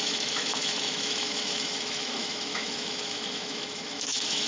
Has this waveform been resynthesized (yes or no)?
yes